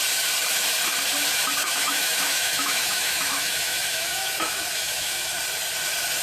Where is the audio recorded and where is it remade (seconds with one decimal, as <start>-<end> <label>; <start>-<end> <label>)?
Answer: 0.0-1.6 recorded; 1.6-5.3 remade; 5.3-6.2 recorded